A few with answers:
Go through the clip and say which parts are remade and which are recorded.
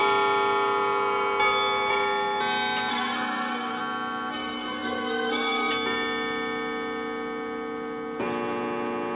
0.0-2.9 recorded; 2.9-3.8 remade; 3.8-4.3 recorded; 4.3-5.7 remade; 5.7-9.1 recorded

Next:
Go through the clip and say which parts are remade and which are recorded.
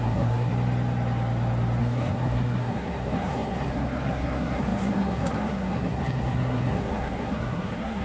0.0-0.5 remade; 0.5-1.8 recorded; 1.8-8.0 remade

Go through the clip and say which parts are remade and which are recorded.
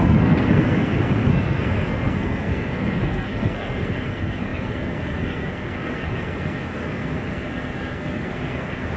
0.0-9.0 remade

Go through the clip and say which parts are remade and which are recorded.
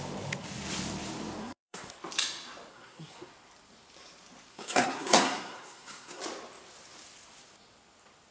0.0-1.4 recorded; 1.4-1.9 remade; 1.9-2.7 recorded; 2.7-3.3 remade; 3.3-4.5 recorded; 4.5-6.2 remade; 6.2-8.3 recorded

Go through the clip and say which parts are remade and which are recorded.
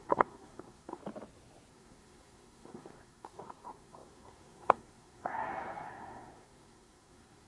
0.0-1.0 remade; 1.0-1.7 recorded; 1.7-7.5 remade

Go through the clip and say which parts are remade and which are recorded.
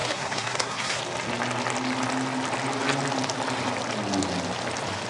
0.0-1.0 remade; 1.0-5.1 recorded